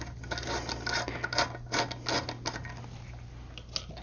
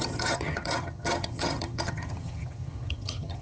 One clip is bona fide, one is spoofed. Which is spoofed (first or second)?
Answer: second